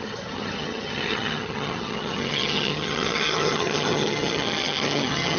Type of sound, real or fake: fake